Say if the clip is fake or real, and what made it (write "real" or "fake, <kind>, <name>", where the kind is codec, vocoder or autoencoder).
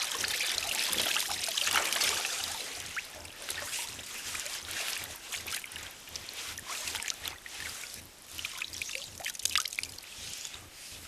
real